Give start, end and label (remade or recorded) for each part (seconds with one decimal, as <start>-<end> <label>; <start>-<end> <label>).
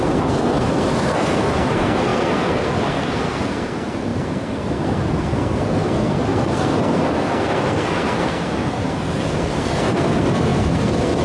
0.0-11.2 remade